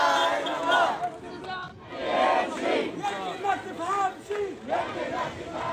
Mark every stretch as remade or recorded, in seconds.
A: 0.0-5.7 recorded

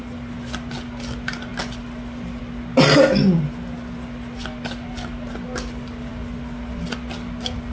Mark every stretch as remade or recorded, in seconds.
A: 0.0-7.7 recorded

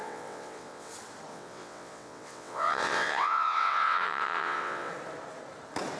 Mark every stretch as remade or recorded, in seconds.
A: 0.0-0.9 remade; 0.9-1.3 recorded; 1.3-4.9 remade; 4.9-6.0 recorded